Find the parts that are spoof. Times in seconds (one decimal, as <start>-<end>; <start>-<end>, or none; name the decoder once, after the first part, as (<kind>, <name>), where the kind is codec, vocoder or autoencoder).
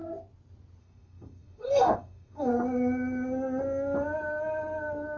0.8-2.5 (codec, SNAC)